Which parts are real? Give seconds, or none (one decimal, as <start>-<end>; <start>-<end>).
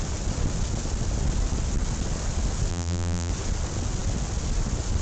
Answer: 0.0-2.7; 3.3-5.0